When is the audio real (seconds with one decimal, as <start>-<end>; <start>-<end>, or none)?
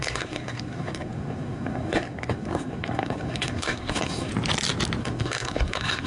4.3-5.0